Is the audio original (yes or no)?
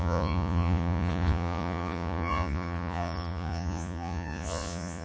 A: no